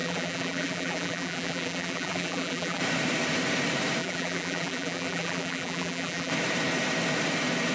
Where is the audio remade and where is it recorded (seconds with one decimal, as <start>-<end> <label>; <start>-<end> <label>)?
0.0-2.8 remade; 2.8-4.0 recorded; 4.0-6.3 remade; 6.3-7.7 recorded